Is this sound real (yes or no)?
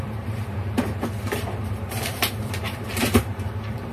no